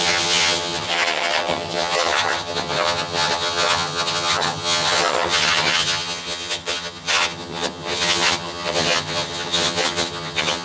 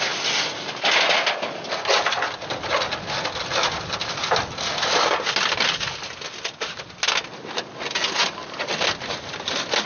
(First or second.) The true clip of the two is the second